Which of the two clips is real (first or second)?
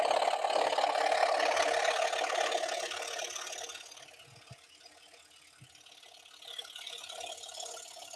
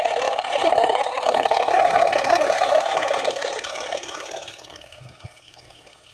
first